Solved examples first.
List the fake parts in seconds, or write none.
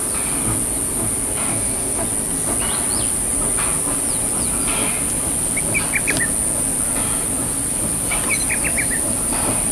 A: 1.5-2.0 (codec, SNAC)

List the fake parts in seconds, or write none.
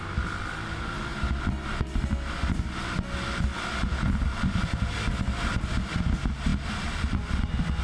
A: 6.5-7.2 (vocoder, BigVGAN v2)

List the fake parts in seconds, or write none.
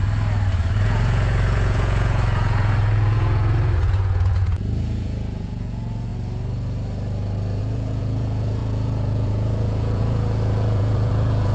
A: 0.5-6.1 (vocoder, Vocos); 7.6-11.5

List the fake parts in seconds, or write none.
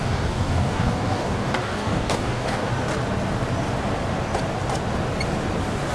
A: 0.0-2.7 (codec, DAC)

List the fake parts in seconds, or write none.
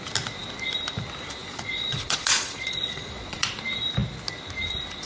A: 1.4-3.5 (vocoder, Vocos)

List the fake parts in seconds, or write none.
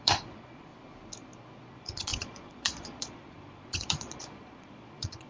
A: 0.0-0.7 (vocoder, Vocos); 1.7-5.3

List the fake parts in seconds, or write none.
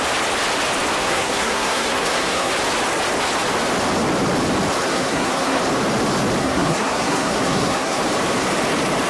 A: 1.0-2.5 (codec, SNAC); 4.9-5.6; 6.4-8.0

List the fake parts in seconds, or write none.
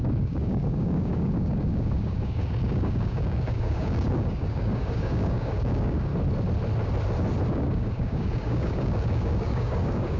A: 0.0-6.1 (codec, DAC); 7.5-10.2